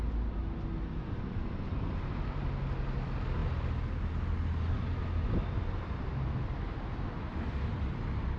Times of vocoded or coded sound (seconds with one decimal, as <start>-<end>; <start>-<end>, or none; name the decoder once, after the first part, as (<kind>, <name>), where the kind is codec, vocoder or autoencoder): none